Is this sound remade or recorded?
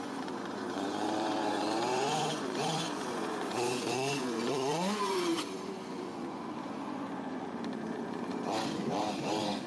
remade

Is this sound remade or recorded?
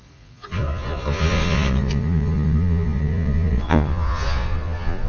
remade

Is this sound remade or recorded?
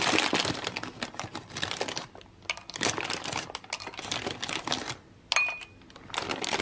recorded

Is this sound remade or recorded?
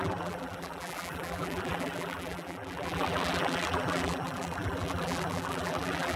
remade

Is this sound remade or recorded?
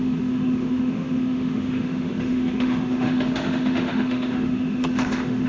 remade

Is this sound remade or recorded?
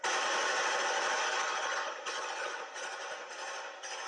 recorded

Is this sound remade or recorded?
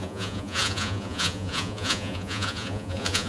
remade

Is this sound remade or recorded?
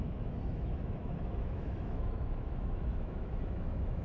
remade